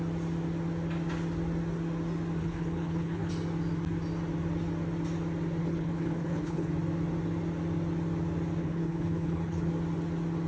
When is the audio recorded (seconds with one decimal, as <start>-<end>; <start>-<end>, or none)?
0.0-2.4; 3.3-5.6; 6.7-8.6; 9.7-10.5